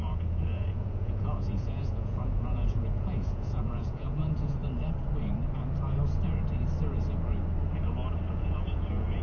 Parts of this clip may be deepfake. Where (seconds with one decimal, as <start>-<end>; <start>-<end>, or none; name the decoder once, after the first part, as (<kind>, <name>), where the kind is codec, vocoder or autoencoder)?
0.0-4.6 (vocoder, Vocos); 8.3-9.2